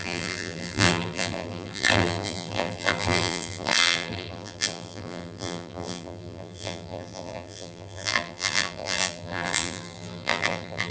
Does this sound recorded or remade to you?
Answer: remade